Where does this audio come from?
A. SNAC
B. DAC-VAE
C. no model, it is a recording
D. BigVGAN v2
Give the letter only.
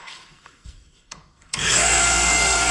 A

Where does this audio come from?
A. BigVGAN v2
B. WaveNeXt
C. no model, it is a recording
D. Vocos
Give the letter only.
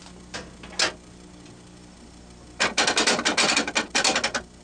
C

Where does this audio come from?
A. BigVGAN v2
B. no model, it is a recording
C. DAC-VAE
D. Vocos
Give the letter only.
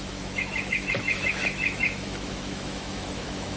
C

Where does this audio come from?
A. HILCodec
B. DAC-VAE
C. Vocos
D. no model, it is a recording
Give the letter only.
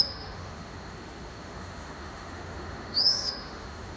B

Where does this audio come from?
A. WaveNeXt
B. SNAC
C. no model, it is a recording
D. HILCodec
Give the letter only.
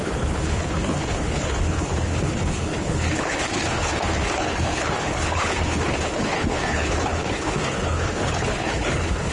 D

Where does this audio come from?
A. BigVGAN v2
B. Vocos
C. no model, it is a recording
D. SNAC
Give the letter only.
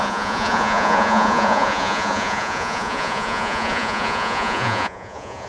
B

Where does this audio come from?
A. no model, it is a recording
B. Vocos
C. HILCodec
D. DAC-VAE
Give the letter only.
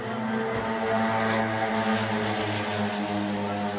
A